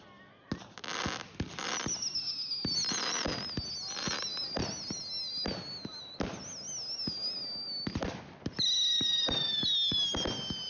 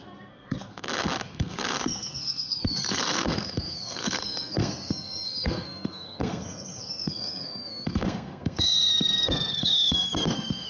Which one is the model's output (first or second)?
second